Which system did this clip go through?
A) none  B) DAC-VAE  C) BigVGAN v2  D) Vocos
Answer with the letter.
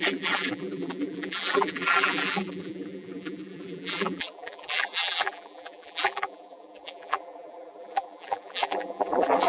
C